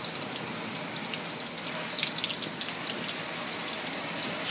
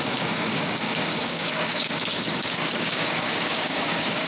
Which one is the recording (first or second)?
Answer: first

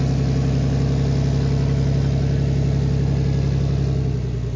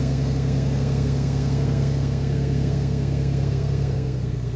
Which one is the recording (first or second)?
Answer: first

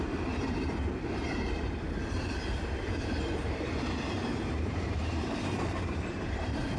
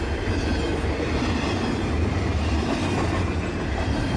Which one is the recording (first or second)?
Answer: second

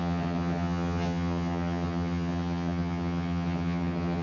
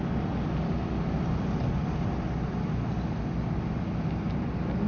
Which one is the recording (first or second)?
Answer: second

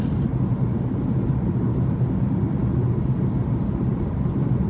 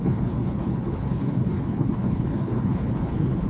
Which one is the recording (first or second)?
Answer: first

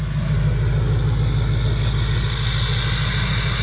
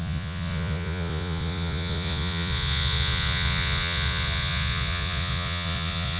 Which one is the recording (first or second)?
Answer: first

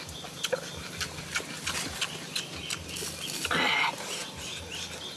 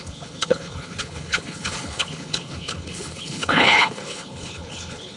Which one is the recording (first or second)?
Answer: first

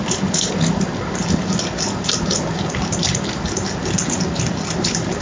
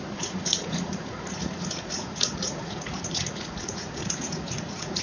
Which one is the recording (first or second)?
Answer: first